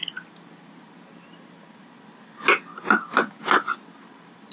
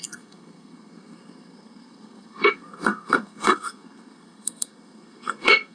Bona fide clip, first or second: first